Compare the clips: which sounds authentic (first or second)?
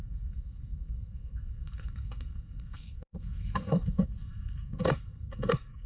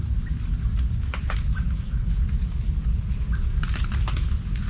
second